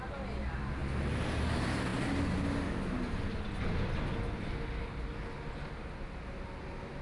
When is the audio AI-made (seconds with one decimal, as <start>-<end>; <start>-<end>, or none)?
none